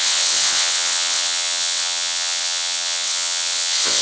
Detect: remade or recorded remade